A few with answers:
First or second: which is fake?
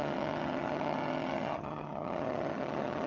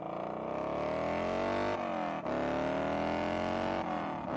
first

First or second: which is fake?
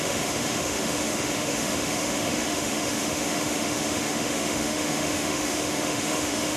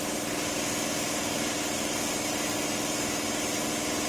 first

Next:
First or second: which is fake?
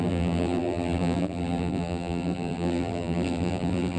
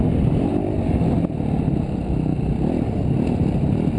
first